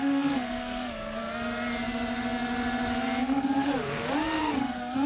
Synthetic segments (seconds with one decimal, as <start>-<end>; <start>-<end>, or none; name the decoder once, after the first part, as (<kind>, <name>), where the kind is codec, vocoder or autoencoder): 0.0-1.2 (codec, SNAC); 3.2-3.7; 4.4-5.1